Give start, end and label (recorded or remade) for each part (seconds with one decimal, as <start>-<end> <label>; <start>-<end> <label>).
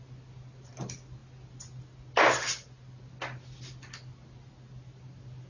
0.0-5.5 recorded